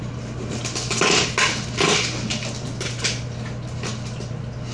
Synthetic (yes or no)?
no